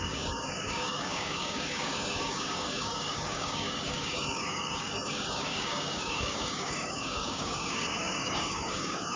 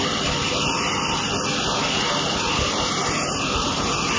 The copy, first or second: first